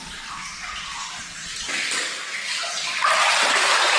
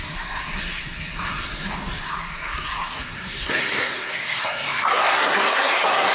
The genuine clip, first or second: first